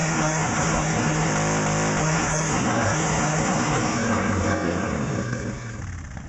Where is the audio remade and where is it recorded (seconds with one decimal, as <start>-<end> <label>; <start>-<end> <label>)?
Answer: 0.0-1.3 remade; 1.3-2.0 recorded; 2.0-5.8 remade; 5.8-6.3 recorded